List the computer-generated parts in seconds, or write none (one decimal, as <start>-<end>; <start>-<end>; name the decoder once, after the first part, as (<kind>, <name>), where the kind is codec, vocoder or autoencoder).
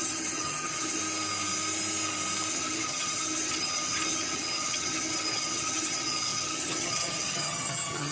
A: 0.0-1.0 (vocoder, HiFi-GAN); 2.5-8.1